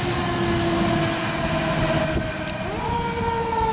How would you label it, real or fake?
real